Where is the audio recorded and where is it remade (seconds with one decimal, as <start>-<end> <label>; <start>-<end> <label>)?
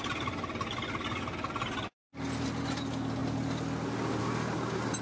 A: 0.0-5.0 recorded